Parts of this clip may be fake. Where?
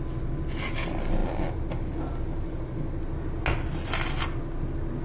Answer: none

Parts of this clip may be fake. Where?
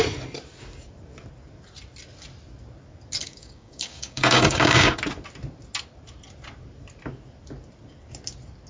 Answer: 3.2-5.0 (codec, DAC)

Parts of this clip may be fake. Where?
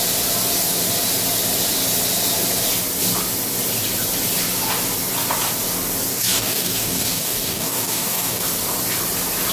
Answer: 6.1-8.4 (codec, DAC)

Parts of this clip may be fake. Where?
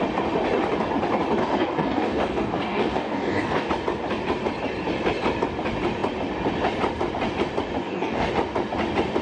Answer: 1.4-3.7 (codec, DAC); 7.8-8.3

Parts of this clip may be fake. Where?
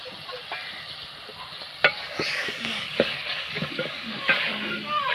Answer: 1.9-5.1 (codec, DAC)